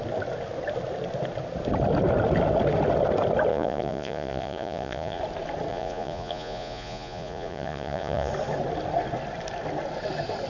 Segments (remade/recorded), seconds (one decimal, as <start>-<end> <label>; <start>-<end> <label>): 0.0-3.5 recorded; 3.5-5.2 remade; 5.2-5.7 recorded; 5.7-8.3 remade; 8.3-10.5 recorded